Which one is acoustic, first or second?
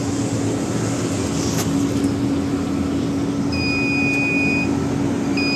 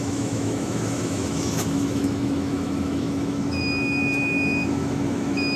first